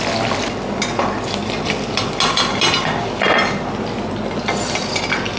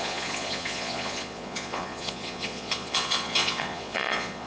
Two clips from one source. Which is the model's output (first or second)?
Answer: second